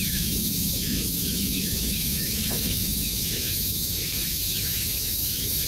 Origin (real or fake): fake